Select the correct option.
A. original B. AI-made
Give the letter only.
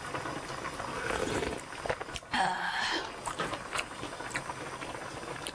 A